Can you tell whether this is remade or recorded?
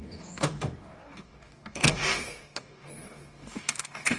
remade